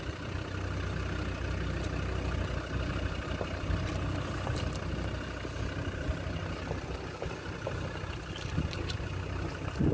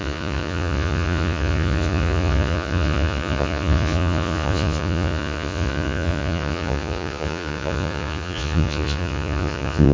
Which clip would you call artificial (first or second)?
second